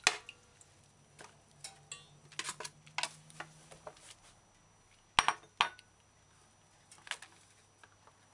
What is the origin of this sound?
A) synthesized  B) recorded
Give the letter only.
B